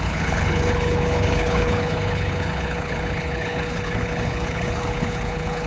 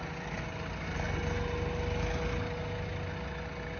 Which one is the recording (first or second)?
second